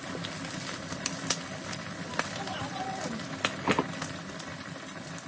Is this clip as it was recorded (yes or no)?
yes